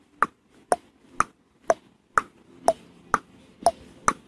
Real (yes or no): yes